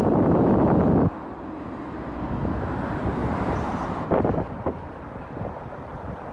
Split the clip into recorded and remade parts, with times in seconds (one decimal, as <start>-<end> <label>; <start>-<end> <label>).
0.0-6.3 recorded